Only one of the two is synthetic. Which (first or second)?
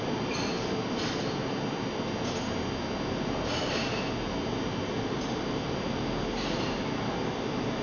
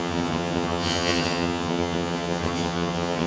second